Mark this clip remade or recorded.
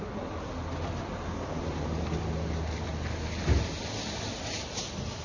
recorded